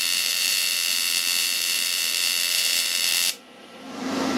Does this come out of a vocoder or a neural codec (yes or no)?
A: yes